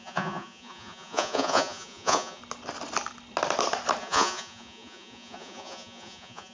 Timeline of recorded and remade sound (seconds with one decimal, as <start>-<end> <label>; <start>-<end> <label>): 0.0-2.4 remade; 2.4-4.0 recorded; 4.0-6.5 remade